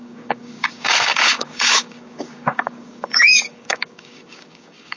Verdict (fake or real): fake